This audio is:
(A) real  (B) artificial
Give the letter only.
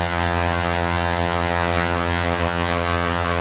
B